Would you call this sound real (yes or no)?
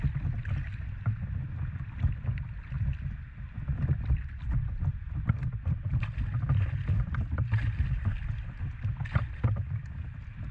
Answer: yes